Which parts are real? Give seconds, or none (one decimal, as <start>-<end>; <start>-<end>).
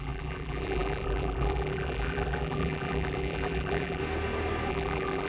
4.0-4.7